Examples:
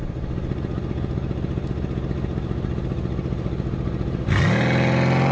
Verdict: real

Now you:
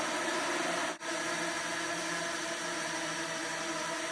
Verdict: real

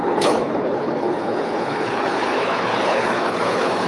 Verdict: fake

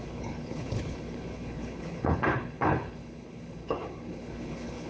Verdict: fake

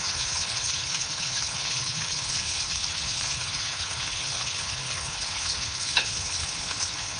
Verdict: fake